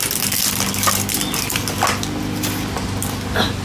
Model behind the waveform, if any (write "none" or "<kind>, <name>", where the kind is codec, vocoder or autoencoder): none